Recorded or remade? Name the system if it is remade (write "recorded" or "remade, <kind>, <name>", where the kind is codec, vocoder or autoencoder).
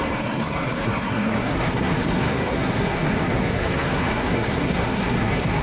remade, codec, SNAC